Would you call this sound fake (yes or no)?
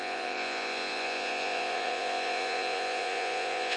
yes